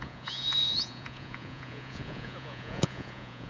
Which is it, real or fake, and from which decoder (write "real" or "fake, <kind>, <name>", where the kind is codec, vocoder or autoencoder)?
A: fake, vocoder, Vocos